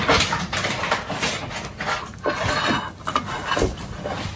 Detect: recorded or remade recorded